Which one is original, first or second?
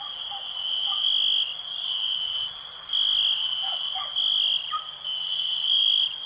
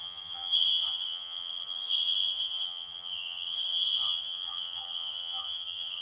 first